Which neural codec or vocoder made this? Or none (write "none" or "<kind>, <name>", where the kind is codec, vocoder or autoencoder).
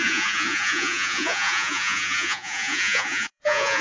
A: vocoder, Vocos